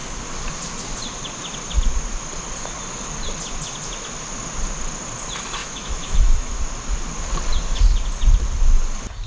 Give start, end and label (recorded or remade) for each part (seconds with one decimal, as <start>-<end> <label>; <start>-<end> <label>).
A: 0.0-5.6 recorded; 5.6-6.6 remade; 6.6-9.3 recorded